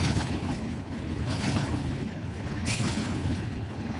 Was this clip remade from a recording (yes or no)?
yes